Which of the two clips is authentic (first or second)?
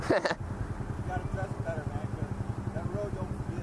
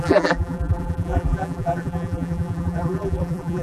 first